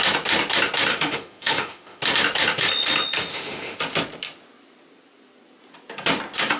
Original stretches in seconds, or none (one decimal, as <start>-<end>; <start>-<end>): 0.0-0.9; 2.0-3.3; 3.8-6.6